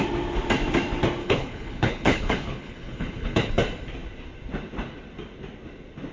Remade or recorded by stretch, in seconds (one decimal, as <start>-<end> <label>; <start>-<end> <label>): 0.0-1.2 recorded; 1.2-3.5 remade; 3.5-6.1 recorded